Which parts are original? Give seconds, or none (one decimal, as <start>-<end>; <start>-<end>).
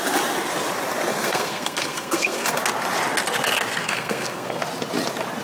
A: 0.0-1.1; 2.6-3.8; 4.6-5.4